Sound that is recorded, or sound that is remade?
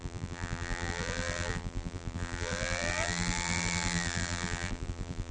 remade